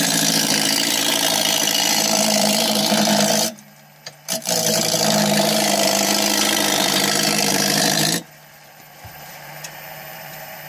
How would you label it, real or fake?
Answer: fake